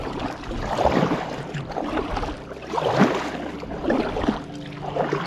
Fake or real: real